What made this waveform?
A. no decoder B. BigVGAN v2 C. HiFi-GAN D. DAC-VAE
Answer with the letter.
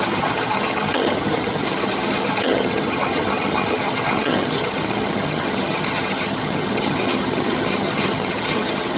C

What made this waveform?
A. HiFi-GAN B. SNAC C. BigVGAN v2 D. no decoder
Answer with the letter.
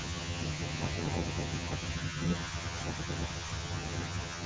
A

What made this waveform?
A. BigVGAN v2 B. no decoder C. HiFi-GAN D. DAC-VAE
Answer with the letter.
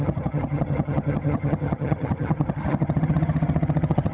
C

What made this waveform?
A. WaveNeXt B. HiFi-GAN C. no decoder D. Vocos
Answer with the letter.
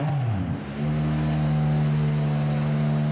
C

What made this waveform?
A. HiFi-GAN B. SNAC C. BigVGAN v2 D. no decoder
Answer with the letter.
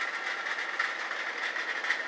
D